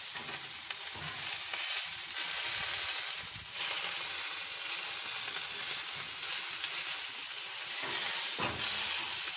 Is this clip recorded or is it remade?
recorded